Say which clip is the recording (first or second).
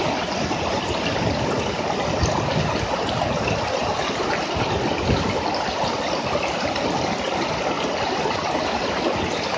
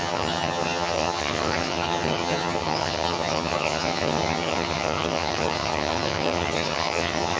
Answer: first